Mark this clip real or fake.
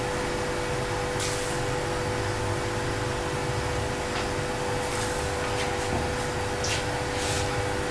real